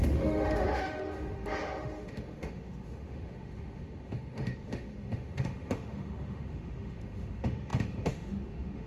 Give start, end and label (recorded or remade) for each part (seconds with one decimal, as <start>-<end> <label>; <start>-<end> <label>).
0.0-8.9 remade